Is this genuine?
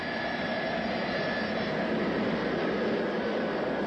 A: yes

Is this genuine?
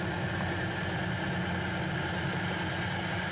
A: yes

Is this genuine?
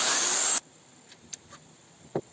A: yes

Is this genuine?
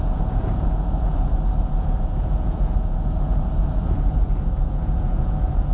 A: no